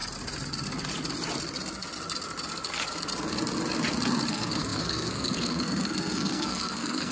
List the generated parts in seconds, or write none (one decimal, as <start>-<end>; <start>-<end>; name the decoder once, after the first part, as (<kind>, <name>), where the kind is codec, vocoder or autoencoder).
4.3-7.1 (codec, SNAC)